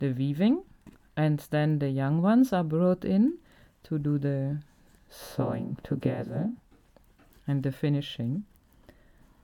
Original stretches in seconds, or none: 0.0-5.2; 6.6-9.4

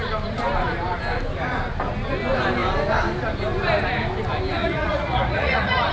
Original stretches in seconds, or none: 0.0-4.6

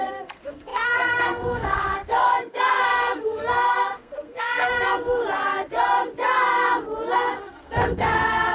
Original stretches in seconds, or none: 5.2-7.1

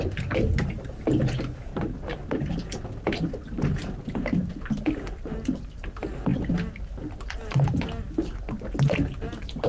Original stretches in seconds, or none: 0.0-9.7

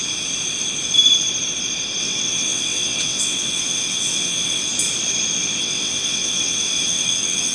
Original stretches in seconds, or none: 0.0-2.0; 4.7-5.6

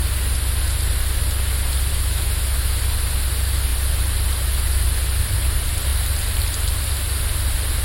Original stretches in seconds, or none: 0.0-1.9; 2.8-7.8

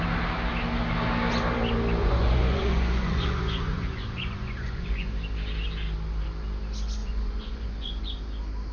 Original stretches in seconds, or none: 0.0-2.0; 5.1-7.0; 8.0-8.7

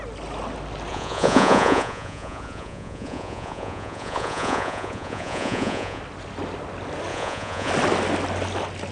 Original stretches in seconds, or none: 0.0-0.9; 6.0-7.1; 7.7-8.9